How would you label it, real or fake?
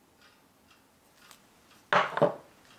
real